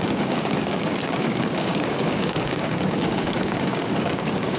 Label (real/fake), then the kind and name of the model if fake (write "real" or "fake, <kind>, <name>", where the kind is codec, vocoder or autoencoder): fake, codec, DAC